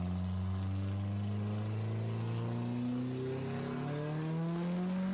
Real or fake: real